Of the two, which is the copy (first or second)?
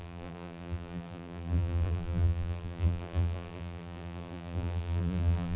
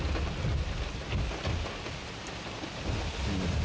first